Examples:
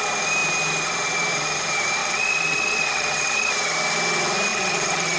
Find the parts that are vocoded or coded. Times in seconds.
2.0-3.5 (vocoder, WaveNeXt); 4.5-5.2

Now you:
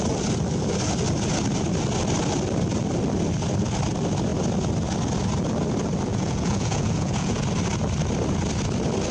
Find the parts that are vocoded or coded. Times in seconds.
6.1-7.4 (vocoder, Vocos)

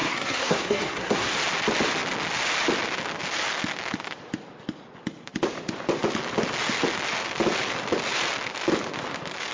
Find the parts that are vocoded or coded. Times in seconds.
0.0-1.3 (codec, SNAC)